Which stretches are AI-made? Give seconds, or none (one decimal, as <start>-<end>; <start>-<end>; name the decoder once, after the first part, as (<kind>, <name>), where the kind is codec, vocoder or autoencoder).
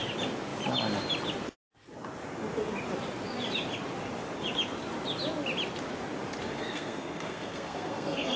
6.5-8.4 (codec, SNAC)